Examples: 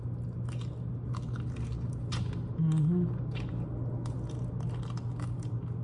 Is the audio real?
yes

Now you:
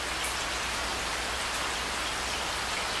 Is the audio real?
yes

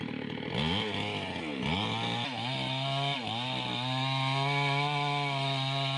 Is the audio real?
yes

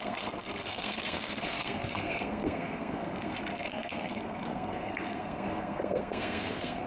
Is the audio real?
no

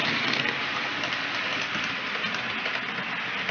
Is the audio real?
yes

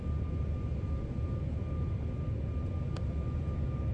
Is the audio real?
yes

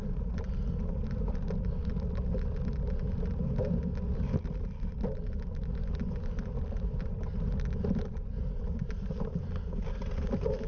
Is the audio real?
yes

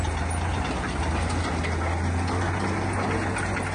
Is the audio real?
yes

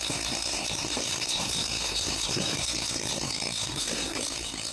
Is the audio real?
no